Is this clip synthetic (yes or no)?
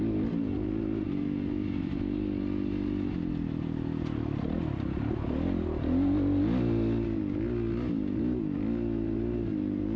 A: no